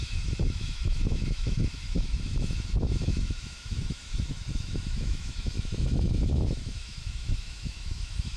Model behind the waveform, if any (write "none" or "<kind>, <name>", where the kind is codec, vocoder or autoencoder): autoencoder, DAC-VAE